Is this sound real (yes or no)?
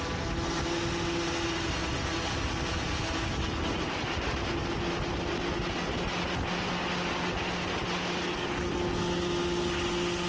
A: yes